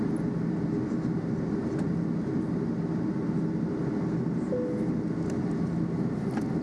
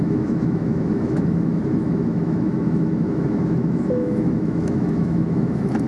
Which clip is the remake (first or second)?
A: second